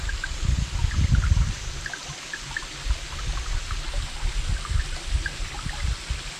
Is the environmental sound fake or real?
real